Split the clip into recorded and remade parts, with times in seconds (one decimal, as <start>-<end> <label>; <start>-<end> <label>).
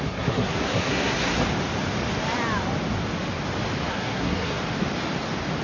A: 0.0-1.4 remade; 1.4-3.9 recorded; 3.9-4.6 remade; 4.6-5.6 recorded